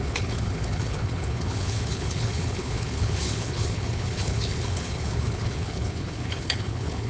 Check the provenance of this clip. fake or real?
fake